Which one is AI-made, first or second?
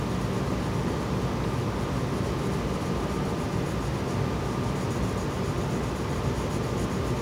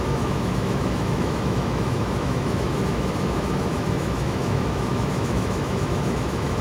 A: second